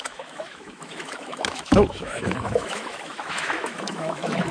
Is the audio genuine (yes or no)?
no